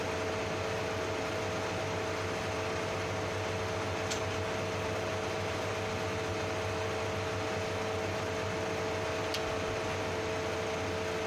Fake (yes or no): no